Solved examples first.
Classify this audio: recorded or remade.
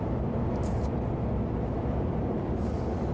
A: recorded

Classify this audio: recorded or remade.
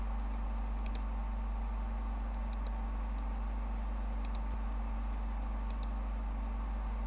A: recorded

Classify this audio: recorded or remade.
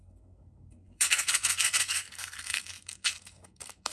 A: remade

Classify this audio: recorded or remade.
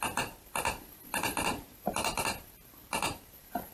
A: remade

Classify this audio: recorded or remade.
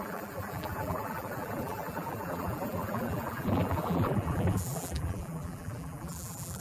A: remade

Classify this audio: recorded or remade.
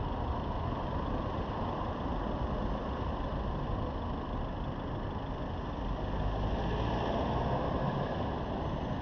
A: recorded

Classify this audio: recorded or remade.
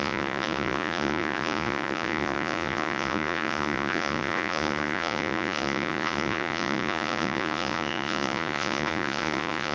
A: remade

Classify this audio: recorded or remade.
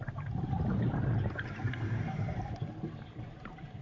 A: remade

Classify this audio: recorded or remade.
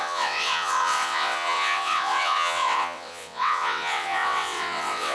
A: remade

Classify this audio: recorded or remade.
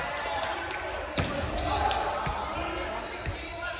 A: recorded